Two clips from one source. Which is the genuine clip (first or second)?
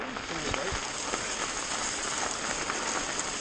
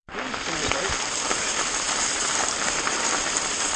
first